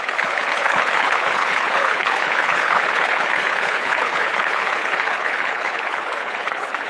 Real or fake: fake